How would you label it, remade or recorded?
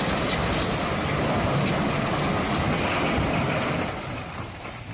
recorded